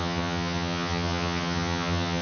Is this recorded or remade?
remade